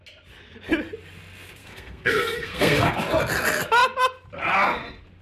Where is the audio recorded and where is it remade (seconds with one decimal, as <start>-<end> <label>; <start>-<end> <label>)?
0.0-1.6 recorded; 1.6-2.9 remade; 2.9-5.2 recorded